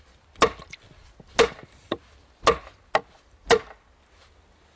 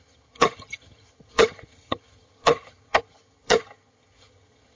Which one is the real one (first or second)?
first